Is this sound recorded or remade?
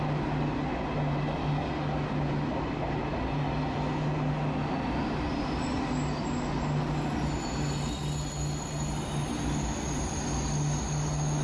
recorded